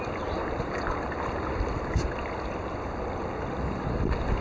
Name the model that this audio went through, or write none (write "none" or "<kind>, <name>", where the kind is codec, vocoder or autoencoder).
none